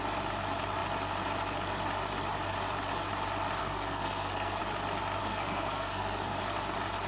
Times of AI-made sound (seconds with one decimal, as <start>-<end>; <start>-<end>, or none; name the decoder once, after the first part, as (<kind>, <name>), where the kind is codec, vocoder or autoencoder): 3.6-4.6 (codec, SNAC); 5.2-6.4